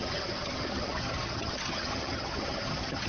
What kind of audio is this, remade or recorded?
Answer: remade